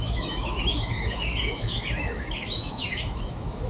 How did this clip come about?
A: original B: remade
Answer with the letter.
B